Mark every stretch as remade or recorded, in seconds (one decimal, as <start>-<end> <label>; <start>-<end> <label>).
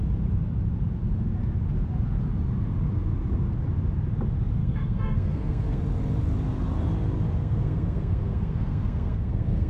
0.0-4.6 recorded; 4.6-5.8 remade; 5.8-7.4 recorded; 7.4-9.7 remade